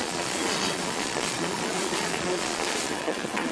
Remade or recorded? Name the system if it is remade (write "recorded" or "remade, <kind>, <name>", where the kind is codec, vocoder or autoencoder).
remade, vocoder, Vocos